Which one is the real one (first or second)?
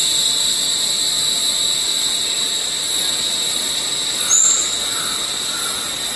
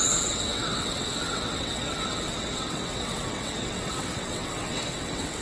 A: first